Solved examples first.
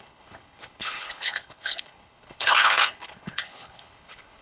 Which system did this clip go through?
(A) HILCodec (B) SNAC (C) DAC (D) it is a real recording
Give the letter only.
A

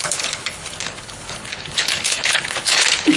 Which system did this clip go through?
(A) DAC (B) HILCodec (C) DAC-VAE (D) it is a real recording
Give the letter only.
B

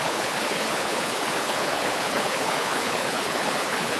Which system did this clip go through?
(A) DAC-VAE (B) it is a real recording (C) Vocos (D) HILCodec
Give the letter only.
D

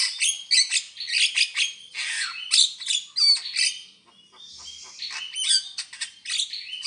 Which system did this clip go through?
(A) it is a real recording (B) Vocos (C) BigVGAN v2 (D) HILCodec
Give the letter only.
A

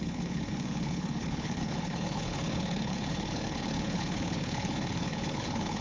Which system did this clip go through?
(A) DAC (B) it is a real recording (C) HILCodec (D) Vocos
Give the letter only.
C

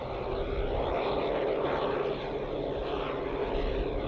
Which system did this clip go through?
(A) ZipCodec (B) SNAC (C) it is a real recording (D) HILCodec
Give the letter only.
C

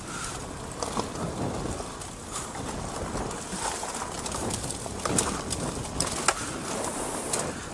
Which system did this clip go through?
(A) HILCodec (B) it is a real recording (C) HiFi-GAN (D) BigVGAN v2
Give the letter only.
B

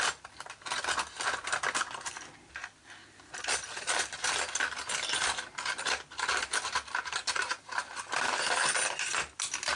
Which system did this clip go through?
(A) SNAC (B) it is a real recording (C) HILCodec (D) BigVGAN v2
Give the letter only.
B